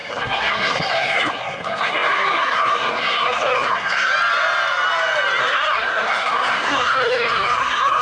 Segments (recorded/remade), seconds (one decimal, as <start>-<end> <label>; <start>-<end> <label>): 0.0-4.1 remade; 4.1-5.4 recorded; 5.4-8.0 remade